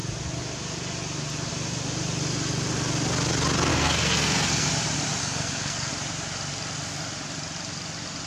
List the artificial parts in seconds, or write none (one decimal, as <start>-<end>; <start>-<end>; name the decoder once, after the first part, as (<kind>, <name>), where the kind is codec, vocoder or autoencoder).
3.7-4.7 (codec, SNAC); 5.2-5.9